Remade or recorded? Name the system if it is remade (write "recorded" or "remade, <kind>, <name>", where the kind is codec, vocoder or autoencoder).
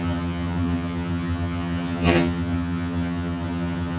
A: remade, vocoder, HiFi-GAN